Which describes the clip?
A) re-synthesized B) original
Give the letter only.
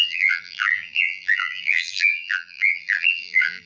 A